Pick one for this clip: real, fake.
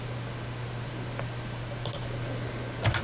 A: real